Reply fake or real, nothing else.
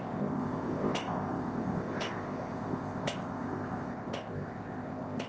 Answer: fake